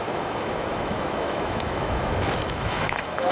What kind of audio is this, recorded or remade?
remade